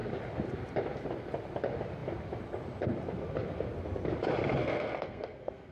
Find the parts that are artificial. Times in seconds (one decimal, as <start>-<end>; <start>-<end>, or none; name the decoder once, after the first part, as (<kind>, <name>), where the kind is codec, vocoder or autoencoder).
4.6-5.7 (codec, SNAC)